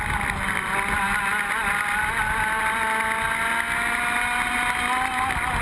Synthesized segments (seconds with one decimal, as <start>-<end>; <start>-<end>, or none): none